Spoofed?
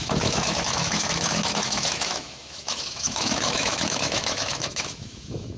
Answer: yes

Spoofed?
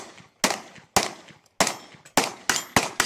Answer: no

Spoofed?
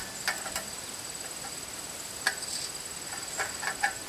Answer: no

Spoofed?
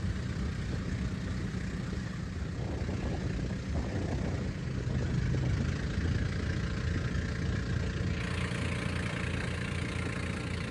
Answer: no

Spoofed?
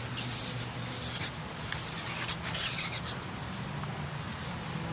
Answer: no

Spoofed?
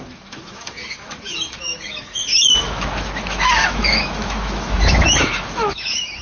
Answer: yes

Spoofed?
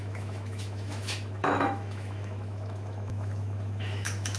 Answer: yes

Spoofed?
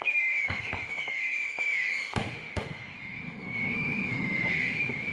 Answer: yes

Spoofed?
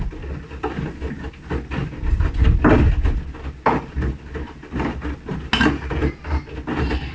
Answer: no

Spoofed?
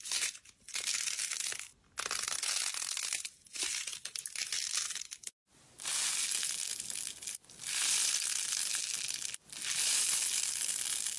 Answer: no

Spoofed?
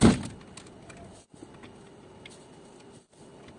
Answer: no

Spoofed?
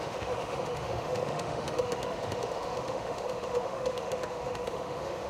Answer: yes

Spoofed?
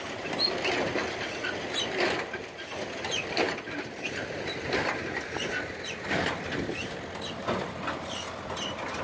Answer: no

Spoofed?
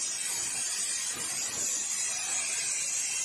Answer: no